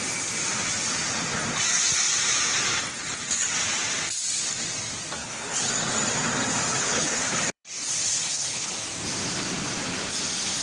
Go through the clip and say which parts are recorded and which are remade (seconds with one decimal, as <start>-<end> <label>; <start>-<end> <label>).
0.0-5.2 recorded; 5.2-5.7 remade; 5.7-6.8 recorded; 6.8-8.7 remade; 8.7-10.6 recorded